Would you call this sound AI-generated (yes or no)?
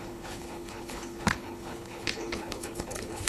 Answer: yes